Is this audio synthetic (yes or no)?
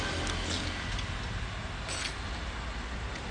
no